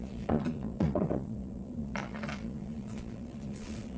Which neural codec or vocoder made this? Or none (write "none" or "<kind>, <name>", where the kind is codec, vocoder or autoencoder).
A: vocoder, Vocos